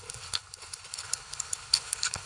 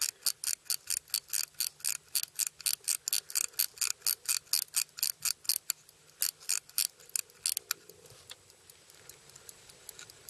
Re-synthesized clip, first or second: first